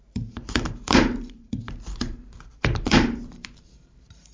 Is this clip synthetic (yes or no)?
yes